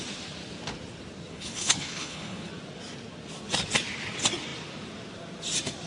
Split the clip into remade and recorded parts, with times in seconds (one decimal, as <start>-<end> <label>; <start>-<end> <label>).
0.0-1.3 recorded; 1.3-2.5 remade; 2.5-5.9 recorded

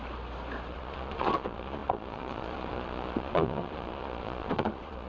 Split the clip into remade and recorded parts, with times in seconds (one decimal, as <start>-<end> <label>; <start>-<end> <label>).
0.0-0.7 recorded; 0.7-5.1 remade

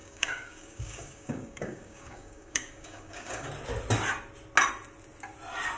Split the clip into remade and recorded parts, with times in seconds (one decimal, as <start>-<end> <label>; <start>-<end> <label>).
0.0-3.5 remade; 3.5-5.8 recorded

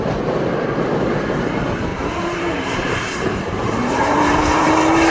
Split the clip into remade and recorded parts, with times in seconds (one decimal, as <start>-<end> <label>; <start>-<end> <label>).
0.0-1.9 recorded; 1.9-5.1 remade

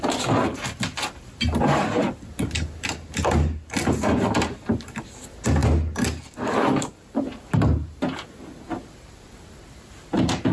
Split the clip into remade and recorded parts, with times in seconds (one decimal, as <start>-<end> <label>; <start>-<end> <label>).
0.0-10.5 recorded

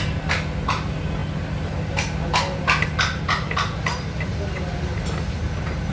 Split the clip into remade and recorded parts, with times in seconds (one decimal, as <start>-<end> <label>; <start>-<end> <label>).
0.0-5.9 recorded

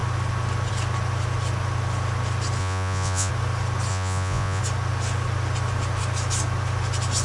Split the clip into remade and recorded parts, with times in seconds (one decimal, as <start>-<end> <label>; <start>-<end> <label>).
0.0-2.6 recorded; 2.6-3.3 remade; 3.3-3.9 recorded; 3.9-4.6 remade; 4.6-7.2 recorded

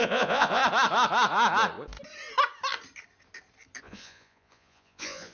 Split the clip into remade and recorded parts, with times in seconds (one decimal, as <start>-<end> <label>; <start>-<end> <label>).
0.0-0.6 remade; 0.6-3.8 recorded; 3.8-5.3 remade